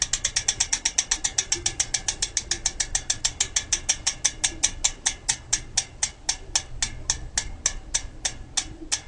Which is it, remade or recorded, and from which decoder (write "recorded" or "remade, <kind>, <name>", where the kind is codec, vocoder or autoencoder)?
recorded